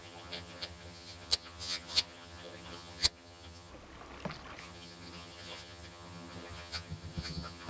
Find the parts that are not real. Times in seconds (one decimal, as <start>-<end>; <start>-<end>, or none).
0.0-3.7; 4.6-7.7